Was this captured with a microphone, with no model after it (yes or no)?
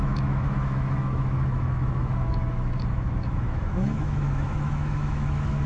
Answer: no